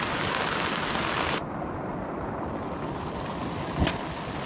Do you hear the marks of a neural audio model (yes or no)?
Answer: no